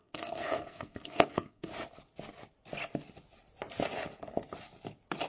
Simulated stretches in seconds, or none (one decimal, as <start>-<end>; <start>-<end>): 0.0-1.7